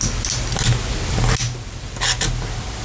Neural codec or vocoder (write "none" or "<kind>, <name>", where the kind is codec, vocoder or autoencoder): none